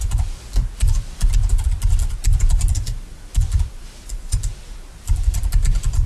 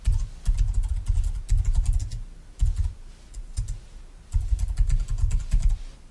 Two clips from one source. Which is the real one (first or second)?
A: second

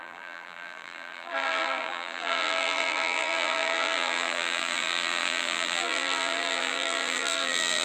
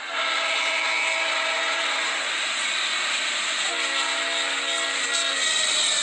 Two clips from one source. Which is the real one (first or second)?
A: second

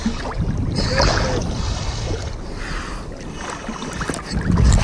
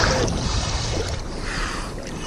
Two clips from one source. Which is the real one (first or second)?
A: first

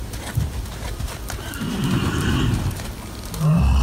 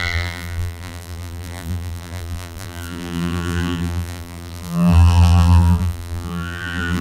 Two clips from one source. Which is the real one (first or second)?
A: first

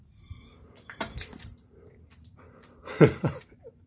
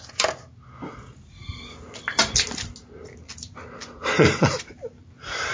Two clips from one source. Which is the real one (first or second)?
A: second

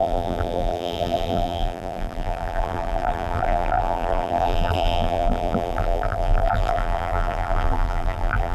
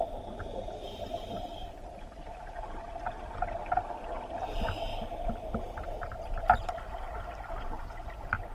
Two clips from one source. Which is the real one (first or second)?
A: second